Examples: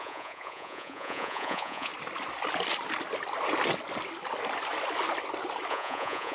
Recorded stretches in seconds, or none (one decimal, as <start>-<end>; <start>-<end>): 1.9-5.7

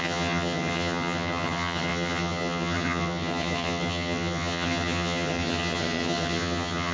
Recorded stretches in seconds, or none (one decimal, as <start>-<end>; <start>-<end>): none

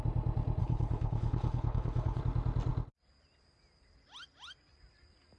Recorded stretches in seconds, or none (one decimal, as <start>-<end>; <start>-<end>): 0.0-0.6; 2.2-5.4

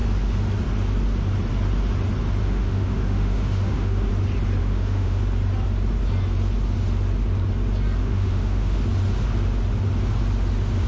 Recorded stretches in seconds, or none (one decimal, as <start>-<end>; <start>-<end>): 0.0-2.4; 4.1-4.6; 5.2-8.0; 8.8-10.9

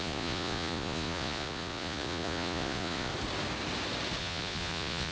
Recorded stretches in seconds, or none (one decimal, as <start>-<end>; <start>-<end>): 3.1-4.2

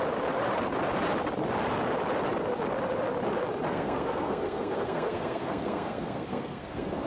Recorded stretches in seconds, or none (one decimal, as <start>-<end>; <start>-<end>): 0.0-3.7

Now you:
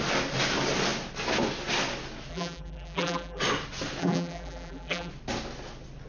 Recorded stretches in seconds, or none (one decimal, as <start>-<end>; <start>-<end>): 0.0-2.3; 3.4-4.0; 5.1-6.1